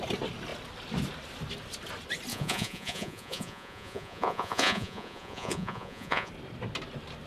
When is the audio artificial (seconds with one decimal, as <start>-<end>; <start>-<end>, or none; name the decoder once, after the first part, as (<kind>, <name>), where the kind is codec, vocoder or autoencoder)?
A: 2.3-6.3 (vocoder, Vocos)